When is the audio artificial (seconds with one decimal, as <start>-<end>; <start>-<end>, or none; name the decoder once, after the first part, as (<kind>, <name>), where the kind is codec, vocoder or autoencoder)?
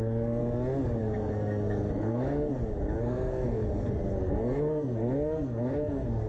0.0-0.4 (codec, SNAC); 1.0-2.5; 3.0-6.3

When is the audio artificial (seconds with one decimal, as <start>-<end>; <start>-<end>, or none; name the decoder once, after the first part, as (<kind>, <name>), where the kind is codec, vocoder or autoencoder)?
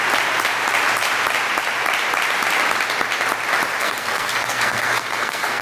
3.8-5.6 (codec, SNAC)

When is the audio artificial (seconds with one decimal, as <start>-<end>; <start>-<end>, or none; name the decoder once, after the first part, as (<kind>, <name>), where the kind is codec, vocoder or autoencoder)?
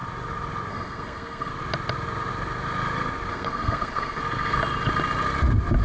0.7-1.5 (codec, SNAC); 3.3-4.2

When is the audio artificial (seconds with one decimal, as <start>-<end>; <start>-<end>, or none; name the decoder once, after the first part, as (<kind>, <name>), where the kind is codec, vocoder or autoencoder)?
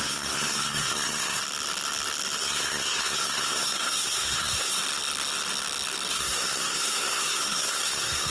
0.0-1.4 (codec, SNAC); 2.4-4.8; 6.1-8.3